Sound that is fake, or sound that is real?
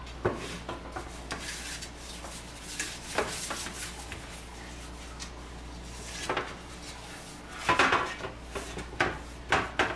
real